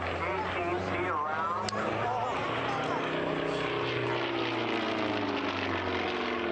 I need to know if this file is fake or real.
real